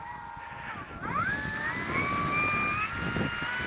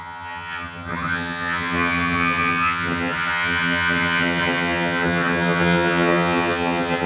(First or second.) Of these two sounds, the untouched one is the first